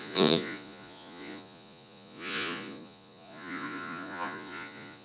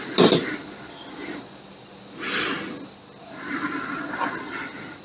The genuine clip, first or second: second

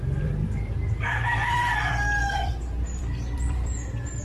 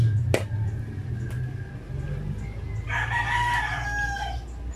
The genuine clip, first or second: second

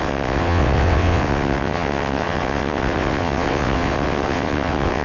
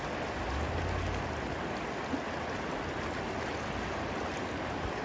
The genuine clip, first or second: second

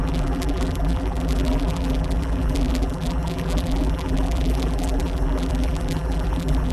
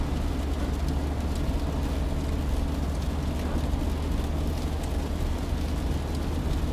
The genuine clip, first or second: second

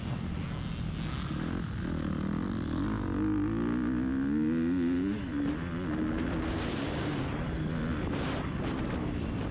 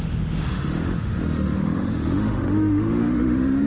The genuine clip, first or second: first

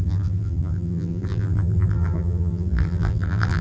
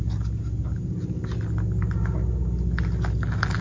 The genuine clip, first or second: second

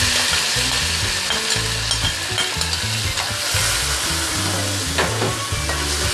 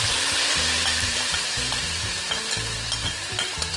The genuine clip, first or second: first